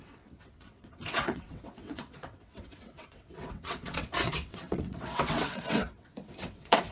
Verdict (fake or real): fake